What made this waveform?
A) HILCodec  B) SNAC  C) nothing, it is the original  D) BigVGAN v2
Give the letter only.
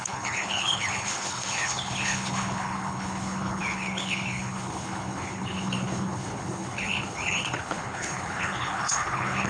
A